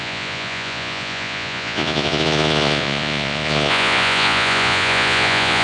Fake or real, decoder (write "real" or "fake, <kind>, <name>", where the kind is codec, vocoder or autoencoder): fake, vocoder, Vocos